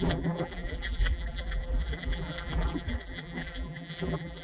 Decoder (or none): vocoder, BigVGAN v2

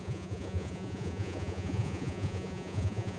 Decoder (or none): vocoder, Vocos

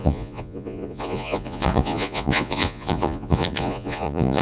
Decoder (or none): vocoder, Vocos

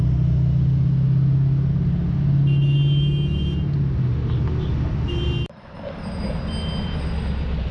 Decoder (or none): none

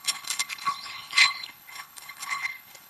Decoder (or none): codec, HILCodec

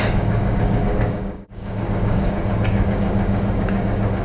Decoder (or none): codec, DAC